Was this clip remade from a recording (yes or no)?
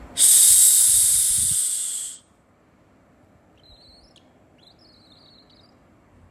no